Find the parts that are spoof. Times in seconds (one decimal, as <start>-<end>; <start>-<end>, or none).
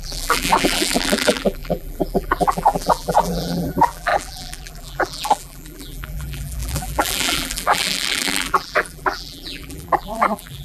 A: 0.0-10.6